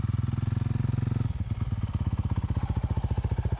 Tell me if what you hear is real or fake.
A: real